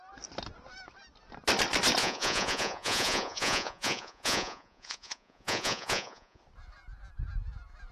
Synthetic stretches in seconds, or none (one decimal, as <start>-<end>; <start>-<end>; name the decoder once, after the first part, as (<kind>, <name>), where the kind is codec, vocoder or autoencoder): 2.0-6.4 (vocoder, Vocos)